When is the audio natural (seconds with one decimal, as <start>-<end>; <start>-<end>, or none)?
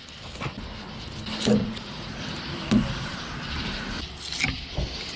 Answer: 0.0-1.6; 2.2-5.2